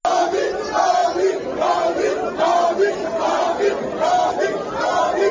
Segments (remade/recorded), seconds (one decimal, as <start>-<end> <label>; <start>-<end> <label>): 0.0-5.3 recorded